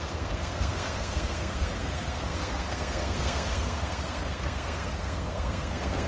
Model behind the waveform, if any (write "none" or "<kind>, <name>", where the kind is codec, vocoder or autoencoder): codec, SNAC